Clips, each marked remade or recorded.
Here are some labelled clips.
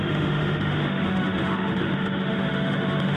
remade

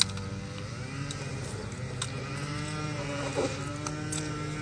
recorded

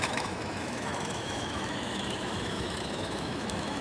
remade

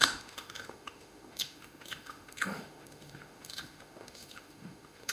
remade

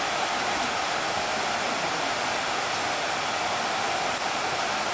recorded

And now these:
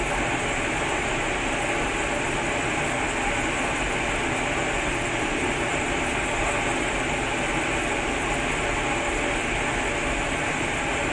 recorded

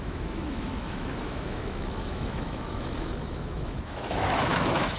remade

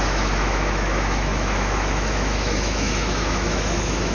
remade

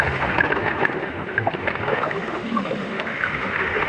remade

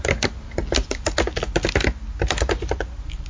recorded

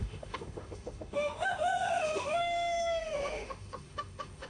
remade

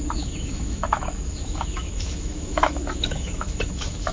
remade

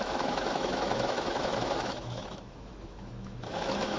remade